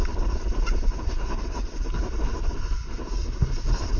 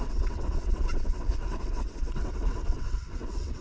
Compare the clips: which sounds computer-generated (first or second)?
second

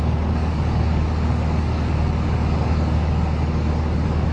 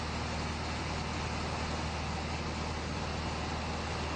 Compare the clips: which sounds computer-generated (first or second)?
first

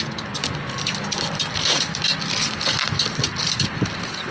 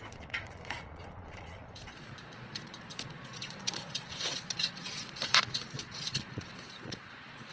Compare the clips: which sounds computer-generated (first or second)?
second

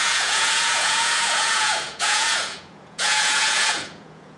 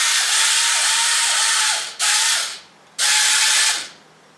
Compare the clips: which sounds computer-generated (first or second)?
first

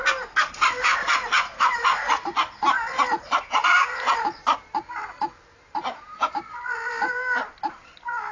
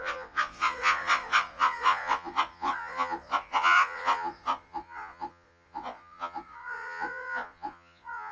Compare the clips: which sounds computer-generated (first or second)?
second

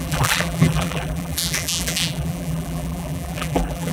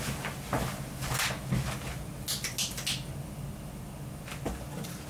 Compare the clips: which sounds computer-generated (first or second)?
first